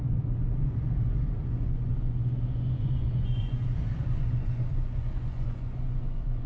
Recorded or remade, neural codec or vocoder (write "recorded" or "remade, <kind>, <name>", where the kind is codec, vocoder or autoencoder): remade, vocoder, Vocos